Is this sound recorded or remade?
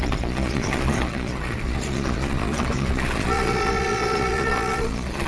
remade